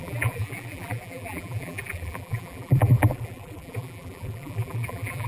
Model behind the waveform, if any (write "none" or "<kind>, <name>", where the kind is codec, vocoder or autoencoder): vocoder, BigVGAN v2